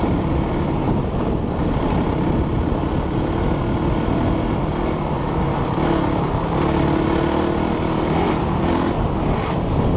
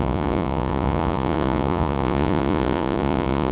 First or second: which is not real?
second